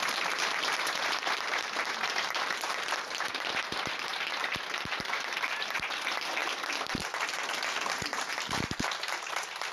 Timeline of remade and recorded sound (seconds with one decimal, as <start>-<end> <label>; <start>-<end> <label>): 0.0-6.4 remade; 6.4-7.9 recorded; 7.9-9.7 remade